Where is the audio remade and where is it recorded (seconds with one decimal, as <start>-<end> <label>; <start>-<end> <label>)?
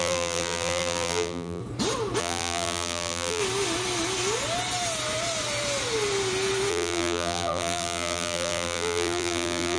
0.0-1.6 remade; 1.6-2.2 recorded; 2.2-3.4 remade; 3.4-6.7 recorded; 6.7-9.8 remade